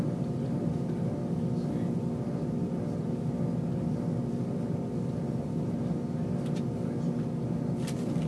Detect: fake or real real